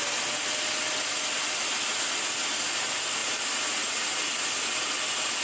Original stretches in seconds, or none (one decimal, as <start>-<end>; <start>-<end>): 0.0-5.4